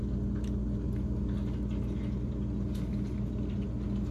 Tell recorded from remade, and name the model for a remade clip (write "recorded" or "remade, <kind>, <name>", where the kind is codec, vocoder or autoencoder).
recorded